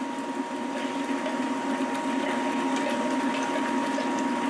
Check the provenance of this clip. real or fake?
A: real